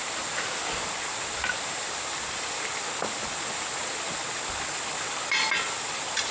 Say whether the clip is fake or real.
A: real